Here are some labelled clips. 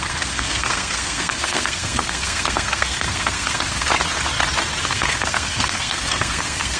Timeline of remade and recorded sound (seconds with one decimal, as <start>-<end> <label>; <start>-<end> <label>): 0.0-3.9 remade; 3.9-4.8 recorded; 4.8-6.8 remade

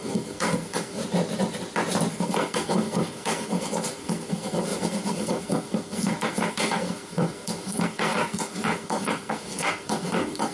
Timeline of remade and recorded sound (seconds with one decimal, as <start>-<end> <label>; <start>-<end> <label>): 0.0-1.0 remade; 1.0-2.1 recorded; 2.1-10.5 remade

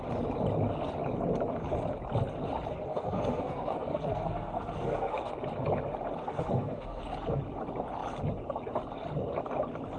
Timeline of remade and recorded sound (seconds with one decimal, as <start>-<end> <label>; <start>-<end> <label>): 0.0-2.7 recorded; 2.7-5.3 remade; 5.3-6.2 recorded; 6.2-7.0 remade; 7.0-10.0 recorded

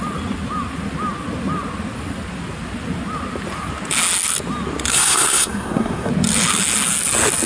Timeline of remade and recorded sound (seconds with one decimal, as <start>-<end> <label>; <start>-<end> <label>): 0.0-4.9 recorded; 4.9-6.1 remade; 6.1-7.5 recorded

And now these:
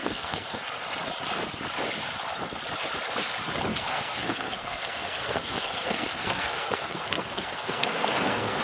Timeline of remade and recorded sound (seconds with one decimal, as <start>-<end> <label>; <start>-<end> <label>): 0.0-0.6 remade; 0.6-3.7 recorded; 3.7-8.6 remade